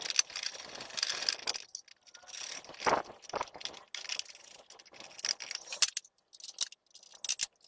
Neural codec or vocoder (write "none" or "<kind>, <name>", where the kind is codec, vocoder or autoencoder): none